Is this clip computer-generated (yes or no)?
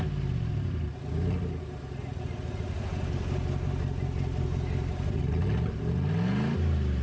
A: no